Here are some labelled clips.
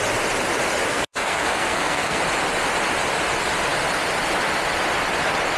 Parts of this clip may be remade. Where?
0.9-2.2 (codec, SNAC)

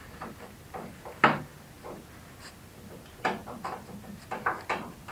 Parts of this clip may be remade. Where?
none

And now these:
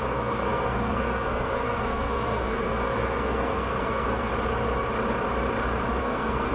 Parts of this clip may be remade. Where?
0.0-4.3 (codec, SNAC); 6.0-6.5

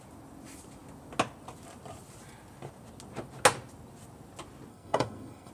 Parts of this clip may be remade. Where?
4.7-5.5 (codec, SNAC)

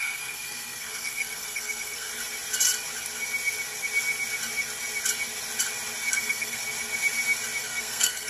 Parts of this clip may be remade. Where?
0.0-2.1 (codec, SNAC); 6.1-6.6; 7.6-8.3

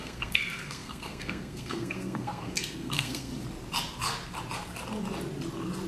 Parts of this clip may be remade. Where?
0.0-3.3 (codec, SNAC)